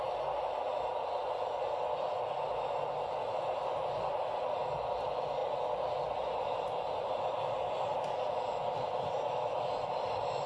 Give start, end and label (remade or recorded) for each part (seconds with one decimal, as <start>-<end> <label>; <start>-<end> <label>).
0.0-10.5 recorded